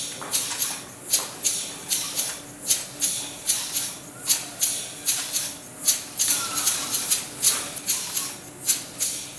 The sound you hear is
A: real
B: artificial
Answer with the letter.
A